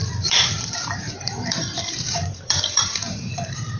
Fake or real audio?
fake